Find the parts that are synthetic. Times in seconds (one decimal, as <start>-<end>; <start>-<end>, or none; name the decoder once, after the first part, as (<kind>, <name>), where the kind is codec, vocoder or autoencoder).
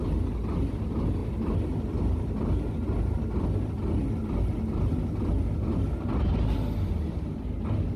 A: none